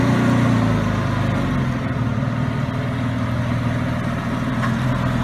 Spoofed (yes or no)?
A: no